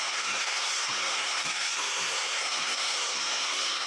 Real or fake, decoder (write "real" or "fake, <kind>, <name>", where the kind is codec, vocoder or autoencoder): fake, codec, SNAC